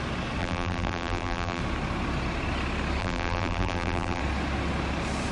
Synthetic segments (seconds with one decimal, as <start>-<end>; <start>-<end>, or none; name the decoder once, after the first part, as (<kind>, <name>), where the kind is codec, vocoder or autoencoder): 0.4-1.6 (vocoder, BigVGAN v2); 3.0-4.2